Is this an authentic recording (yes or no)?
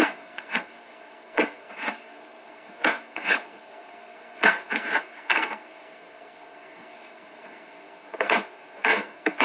no